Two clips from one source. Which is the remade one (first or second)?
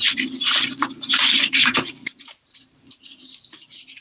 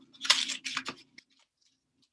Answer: first